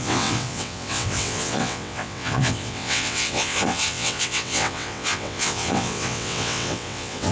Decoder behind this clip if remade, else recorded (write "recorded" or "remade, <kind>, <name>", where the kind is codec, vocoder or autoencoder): remade, vocoder, WaveNeXt